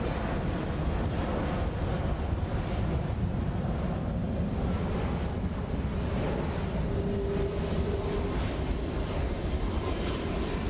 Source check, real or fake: real